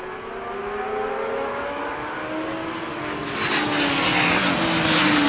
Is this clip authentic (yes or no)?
yes